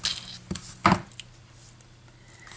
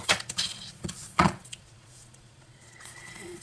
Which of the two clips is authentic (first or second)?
first